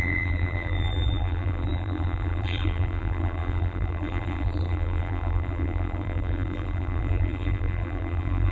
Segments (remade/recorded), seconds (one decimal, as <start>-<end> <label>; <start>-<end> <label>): 0.0-8.5 remade